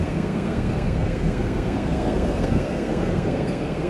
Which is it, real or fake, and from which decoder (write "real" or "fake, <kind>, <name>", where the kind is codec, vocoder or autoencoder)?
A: fake, codec, SNAC